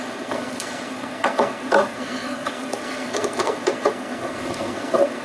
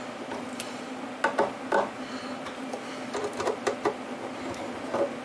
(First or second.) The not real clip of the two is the first